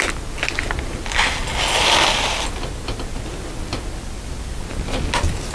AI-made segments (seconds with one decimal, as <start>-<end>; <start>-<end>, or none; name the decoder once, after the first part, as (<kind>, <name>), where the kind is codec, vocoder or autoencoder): none